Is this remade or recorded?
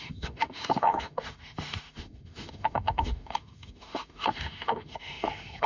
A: remade